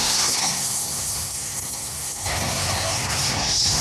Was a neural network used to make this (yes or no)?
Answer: yes